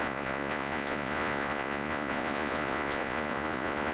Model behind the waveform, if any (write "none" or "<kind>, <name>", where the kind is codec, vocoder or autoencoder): vocoder, Vocos